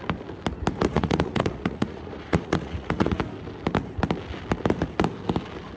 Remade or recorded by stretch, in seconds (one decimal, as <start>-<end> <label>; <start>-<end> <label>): 0.0-0.9 recorded; 0.9-3.2 remade; 3.2-5.8 recorded

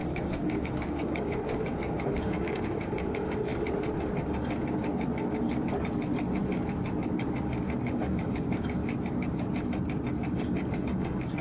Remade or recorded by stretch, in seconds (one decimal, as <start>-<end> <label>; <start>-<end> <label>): 0.0-3.5 remade; 3.5-7.9 recorded; 7.9-8.8 remade; 8.8-10.8 recorded; 10.8-11.4 remade

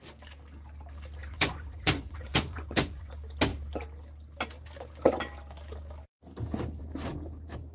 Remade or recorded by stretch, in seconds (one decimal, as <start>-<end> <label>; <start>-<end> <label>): 0.0-1.2 recorded; 1.2-3.1 remade; 3.1-7.7 recorded

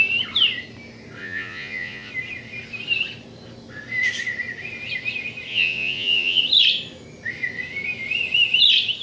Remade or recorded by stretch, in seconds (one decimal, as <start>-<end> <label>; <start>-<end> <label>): 0.0-1.2 recorded; 1.2-2.1 remade; 2.1-5.5 recorded; 5.5-6.4 remade; 6.4-9.0 recorded